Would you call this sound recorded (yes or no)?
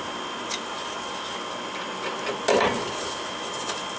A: yes